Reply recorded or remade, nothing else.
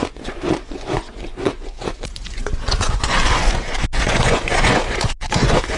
remade